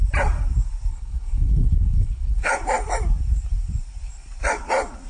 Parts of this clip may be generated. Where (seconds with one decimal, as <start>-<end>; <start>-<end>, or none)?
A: 0.9-2.5